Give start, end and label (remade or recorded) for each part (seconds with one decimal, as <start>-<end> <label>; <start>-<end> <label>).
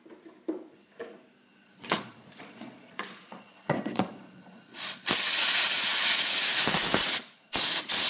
0.0-1.5 recorded; 1.5-5.1 remade; 5.1-8.1 recorded